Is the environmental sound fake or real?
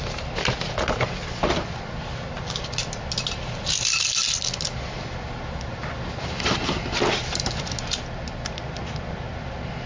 real